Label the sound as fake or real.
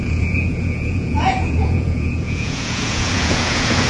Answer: fake